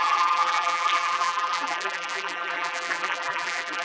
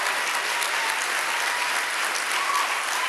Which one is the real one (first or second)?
second